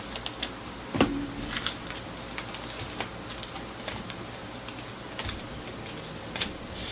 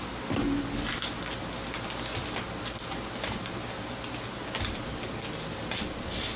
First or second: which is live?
second